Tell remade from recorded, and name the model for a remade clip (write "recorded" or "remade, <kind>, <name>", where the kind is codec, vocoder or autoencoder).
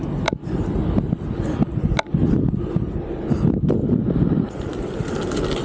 recorded